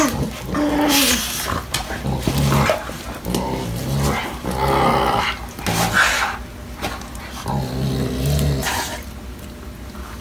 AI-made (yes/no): no